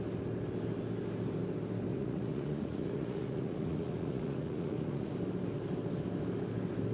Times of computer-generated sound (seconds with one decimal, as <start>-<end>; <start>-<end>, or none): 1.9-5.1